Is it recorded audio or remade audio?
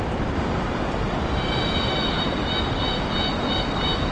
recorded